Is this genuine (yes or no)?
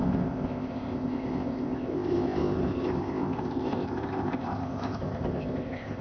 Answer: no